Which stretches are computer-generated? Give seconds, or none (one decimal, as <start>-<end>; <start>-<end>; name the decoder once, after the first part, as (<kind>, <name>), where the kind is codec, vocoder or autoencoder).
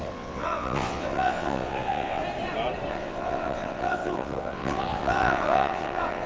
0.0-2.2 (vocoder, WaveNeXt); 2.9-6.3